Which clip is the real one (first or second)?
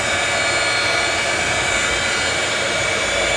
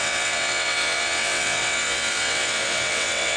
first